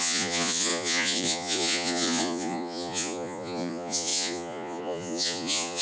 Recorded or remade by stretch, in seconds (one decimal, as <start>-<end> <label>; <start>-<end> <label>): 0.0-5.8 remade